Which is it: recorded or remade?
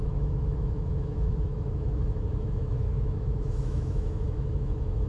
remade